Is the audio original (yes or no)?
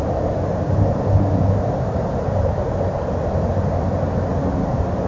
yes